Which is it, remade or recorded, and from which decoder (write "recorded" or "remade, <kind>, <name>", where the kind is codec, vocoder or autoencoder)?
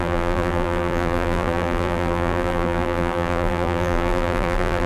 remade, vocoder, BigVGAN v2